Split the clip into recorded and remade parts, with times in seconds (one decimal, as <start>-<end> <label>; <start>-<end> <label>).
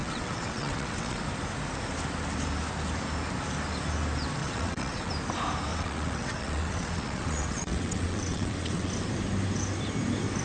0.0-1.2 remade; 1.2-4.4 recorded; 4.4-5.1 remade; 5.1-5.7 recorded; 5.7-8.9 remade; 8.9-10.4 recorded